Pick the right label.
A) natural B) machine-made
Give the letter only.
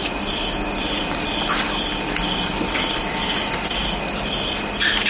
A